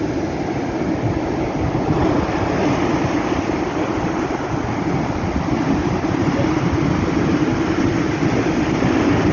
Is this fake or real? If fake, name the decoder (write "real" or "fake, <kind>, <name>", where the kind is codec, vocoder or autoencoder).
real